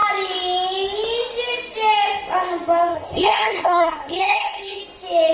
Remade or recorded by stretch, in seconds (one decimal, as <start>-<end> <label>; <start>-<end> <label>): 0.0-2.9 recorded; 2.9-4.8 remade; 4.8-5.3 recorded